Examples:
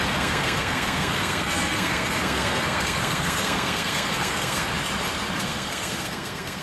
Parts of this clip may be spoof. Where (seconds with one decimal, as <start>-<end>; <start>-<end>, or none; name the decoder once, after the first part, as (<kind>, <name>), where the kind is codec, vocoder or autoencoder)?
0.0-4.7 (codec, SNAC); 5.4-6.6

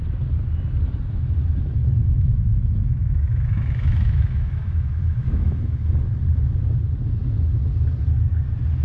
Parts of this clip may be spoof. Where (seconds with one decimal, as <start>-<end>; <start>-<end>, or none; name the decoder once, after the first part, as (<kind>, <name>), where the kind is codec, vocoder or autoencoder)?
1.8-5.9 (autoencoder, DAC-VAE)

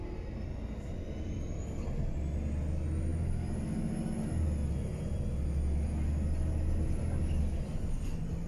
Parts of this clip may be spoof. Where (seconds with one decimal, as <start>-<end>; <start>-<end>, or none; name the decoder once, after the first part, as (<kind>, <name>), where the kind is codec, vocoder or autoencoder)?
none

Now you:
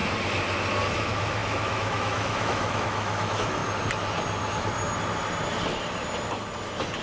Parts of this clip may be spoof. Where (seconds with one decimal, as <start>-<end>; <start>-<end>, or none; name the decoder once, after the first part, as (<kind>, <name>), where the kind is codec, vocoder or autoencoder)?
0.9-3.6 (autoencoder, DAC-VAE)